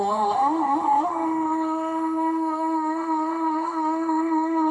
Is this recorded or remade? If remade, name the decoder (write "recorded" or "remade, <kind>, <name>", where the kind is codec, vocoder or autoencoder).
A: remade, autoencoder, DAC-VAE